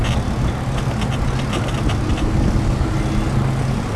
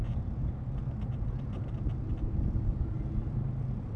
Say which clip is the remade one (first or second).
second